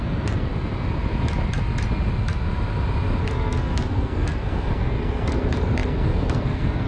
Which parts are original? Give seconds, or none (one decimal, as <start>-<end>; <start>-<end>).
0.5-3.2

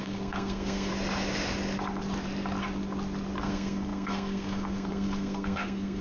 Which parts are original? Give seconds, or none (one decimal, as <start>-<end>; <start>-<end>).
0.9-3.4

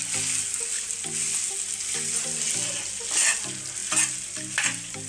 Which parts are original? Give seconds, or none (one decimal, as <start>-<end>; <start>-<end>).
0.0-5.1